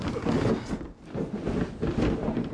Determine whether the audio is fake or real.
real